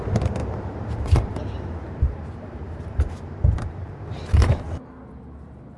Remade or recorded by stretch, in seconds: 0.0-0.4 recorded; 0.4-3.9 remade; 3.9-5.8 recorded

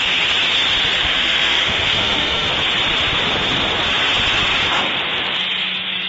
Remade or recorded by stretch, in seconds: 0.0-1.0 recorded; 1.0-2.5 remade; 2.5-6.1 recorded

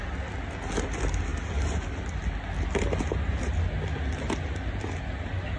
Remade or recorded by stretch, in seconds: 0.0-5.6 recorded

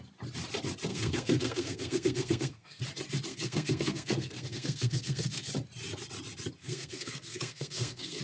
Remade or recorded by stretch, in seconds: 0.0-0.9 recorded; 0.9-2.8 remade; 2.8-3.3 recorded; 3.3-5.5 remade; 5.5-6.6 recorded; 6.6-8.2 remade

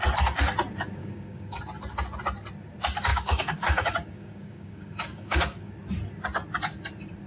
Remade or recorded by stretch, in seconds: 0.0-1.0 recorded; 1.0-1.6 remade; 1.6-3.1 recorded; 3.1-5.7 remade; 5.7-7.3 recorded